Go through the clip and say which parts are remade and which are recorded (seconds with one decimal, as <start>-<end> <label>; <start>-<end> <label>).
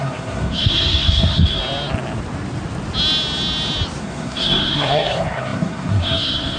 0.0-1.6 remade; 1.6-4.0 recorded; 4.0-6.6 remade